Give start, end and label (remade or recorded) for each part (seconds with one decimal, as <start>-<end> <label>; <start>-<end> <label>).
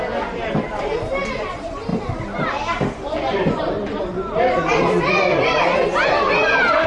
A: 0.0-1.9 recorded; 1.9-5.6 remade; 5.6-6.9 recorded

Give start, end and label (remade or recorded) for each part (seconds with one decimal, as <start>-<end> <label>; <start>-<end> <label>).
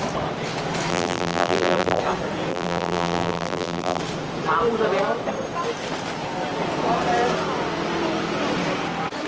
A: 0.0-0.9 recorded; 0.9-2.0 remade; 2.0-2.5 recorded; 2.5-4.0 remade; 4.0-9.3 recorded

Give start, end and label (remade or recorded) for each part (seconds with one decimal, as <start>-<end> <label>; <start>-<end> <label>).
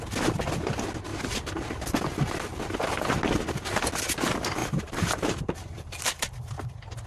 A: 0.0-1.1 recorded; 1.1-1.7 remade; 1.7-4.6 recorded; 4.6-6.5 remade; 6.5-7.1 recorded